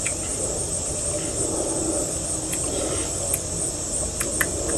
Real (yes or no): yes